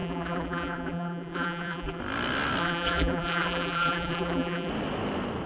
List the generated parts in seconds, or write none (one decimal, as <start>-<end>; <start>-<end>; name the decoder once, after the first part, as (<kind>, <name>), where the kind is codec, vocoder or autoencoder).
0.0-2.0 (vocoder, BigVGAN v2); 2.6-4.7